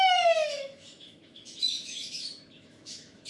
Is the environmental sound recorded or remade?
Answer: remade